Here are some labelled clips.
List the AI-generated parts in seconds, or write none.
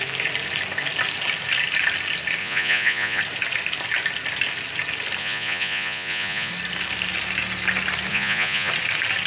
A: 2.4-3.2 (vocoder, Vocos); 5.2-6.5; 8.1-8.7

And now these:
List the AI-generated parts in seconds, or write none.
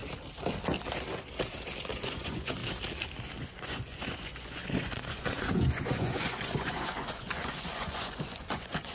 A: 1.9-2.6 (vocoder, Vocos); 3.4-8.9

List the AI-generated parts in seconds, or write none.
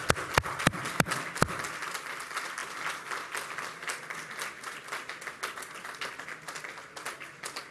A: none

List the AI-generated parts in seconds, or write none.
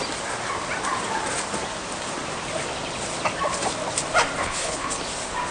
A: 4.4-4.9 (codec, HILCodec)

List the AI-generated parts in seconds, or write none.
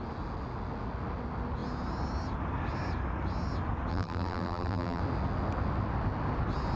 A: 3.9-5.0 (vocoder, BigVGAN v2)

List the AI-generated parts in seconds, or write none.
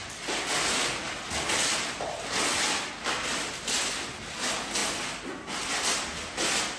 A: none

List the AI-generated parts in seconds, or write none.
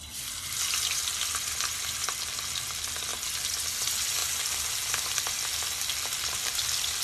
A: none